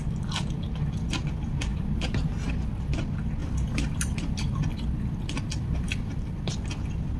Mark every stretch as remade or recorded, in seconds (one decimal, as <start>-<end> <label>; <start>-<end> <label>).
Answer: 0.0-1.7 recorded; 1.7-2.5 remade; 2.5-3.4 recorded; 3.4-6.5 remade; 6.5-7.2 recorded

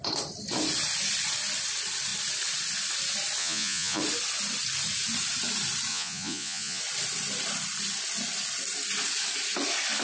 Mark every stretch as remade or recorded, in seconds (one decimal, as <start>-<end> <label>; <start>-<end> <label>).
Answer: 0.0-3.4 recorded; 3.4-4.0 remade; 4.0-5.9 recorded; 5.9-6.8 remade; 6.8-10.0 recorded

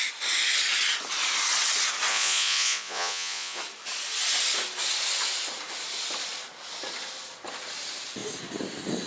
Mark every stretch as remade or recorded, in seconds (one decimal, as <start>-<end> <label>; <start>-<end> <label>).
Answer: 0.0-2.1 recorded; 2.1-3.6 remade; 3.6-9.1 recorded

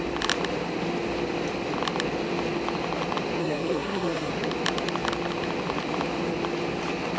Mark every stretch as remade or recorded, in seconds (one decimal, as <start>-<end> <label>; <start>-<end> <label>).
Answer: 0.0-3.4 recorded; 3.4-4.3 remade; 4.3-7.2 recorded